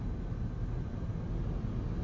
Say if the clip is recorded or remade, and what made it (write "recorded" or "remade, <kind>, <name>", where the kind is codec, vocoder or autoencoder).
recorded